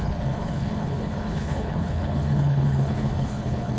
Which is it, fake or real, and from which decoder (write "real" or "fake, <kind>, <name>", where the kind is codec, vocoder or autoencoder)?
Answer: fake, codec, HILCodec